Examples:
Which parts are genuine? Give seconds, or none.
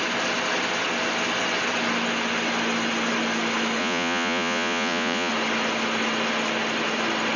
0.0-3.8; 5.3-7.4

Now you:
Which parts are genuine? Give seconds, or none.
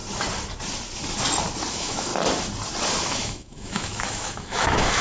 0.0-1.7; 2.1-3.1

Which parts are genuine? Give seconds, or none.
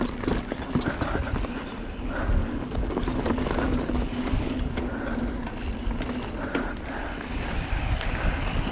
0.0-2.4; 4.8-8.7